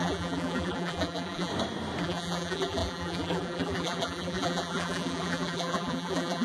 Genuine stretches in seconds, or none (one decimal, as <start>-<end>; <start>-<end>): 1.5-2.0

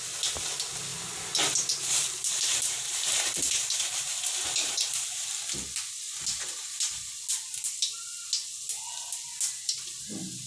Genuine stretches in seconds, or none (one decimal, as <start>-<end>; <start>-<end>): 0.0-0.9; 5.4-6.5; 7.1-10.5

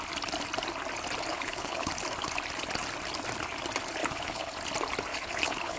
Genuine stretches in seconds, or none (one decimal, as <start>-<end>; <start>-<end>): 0.0-1.3; 1.9-4.0; 4.6-5.1

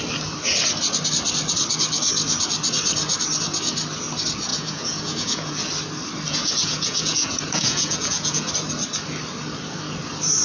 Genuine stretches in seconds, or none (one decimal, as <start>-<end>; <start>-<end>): 0.0-4.5; 5.7-6.3; 8.5-10.4

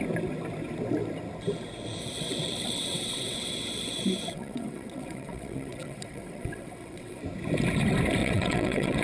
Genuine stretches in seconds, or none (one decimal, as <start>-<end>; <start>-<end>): 0.0-2.0; 7.2-8.2

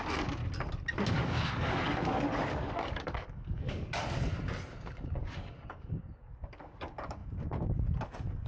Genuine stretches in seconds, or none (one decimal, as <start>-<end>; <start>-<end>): 0.4-1.1; 4.0-4.8

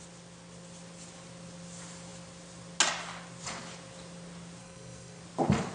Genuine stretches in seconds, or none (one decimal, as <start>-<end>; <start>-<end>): 0.0-4.6; 5.2-5.7

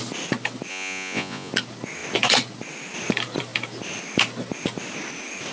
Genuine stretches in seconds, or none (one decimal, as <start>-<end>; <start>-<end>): 0.0-0.7; 1.5-5.5